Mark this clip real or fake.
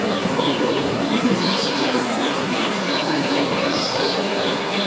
fake